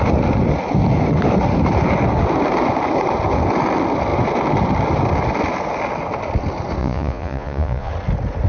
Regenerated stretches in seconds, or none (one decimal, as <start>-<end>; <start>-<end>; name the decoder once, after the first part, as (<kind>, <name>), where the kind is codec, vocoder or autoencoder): 6.8-7.9 (vocoder, Vocos)